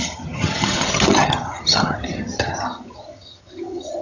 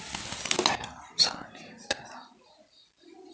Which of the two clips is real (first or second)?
second